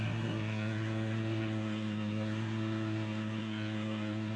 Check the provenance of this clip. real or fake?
fake